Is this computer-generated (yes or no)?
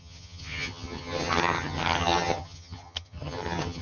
yes